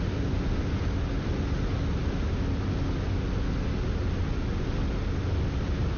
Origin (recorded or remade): recorded